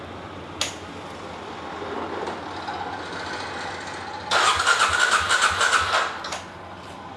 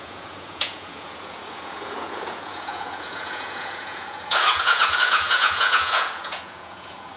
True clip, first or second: first